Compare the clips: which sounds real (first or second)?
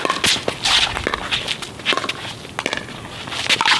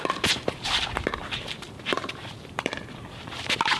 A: first